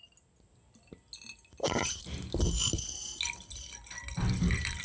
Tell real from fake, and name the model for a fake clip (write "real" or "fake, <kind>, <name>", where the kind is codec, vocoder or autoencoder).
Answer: real